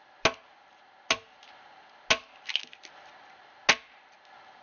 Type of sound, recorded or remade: recorded